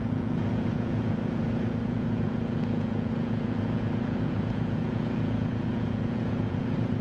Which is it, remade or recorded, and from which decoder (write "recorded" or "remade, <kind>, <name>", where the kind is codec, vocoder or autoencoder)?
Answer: remade, vocoder, Vocos